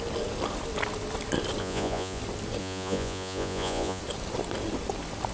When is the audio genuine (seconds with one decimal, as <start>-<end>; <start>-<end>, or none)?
0.0-1.6; 2.2-2.6; 4.0-5.3